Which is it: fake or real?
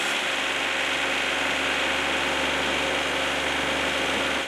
real